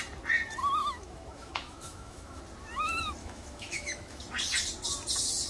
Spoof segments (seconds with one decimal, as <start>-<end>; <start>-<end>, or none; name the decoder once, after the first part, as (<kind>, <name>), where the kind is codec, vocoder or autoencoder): 0.8-2.4 (autoencoder, DAC-VAE); 3.2-4.2